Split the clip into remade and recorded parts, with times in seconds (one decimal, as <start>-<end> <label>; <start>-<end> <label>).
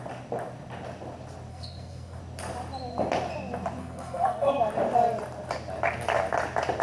0.0-1.5 recorded; 1.5-2.2 remade; 2.2-3.8 recorded; 3.8-4.5 remade; 4.5-6.8 recorded